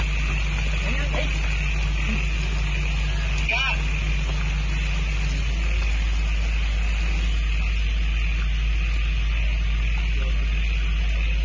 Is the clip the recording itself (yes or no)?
yes